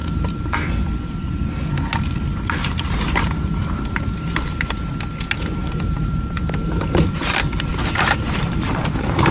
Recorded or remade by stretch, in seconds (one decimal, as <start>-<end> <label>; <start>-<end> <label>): 0.0-2.6 recorded; 2.6-4.9 remade; 4.9-5.6 recorded; 5.6-7.0 remade; 7.0-7.7 recorded; 7.7-9.3 remade